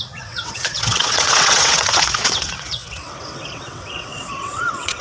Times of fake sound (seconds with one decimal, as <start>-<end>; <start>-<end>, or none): 0.0-5.0